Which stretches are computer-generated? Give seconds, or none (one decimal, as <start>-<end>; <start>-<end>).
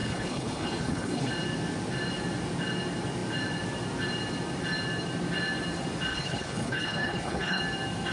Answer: 0.0-1.3; 6.1-7.6